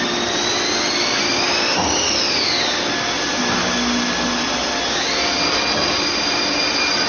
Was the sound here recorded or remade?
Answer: recorded